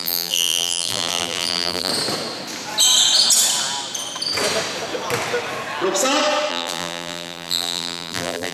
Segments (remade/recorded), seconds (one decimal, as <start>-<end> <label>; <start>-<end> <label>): 0.0-1.9 remade; 1.9-6.5 recorded; 6.5-8.5 remade